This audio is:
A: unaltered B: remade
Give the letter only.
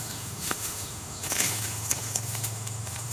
B